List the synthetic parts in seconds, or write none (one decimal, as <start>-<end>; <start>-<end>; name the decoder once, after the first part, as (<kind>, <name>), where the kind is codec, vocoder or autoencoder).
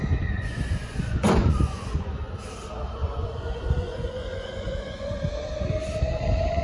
0.5-2.3 (vocoder, Vocos); 3.0-5.2